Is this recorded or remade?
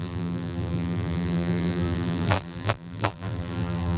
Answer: remade